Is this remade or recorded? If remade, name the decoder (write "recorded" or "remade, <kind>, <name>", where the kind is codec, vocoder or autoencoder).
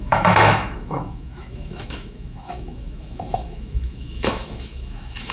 remade, autoencoder, DAC-VAE